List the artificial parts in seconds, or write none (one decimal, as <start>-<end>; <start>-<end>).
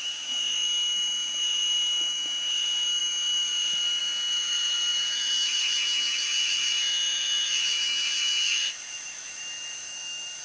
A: 0.0-10.4